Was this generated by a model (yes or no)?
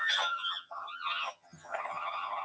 yes